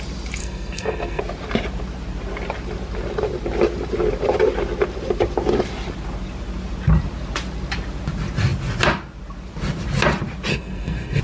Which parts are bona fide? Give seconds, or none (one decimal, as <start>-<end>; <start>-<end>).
0.0-0.4; 1.2-10.5